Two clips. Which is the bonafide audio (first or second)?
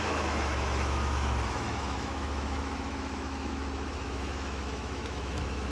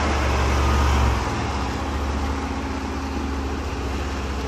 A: second